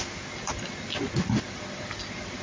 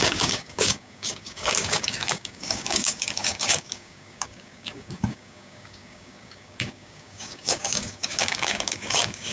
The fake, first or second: second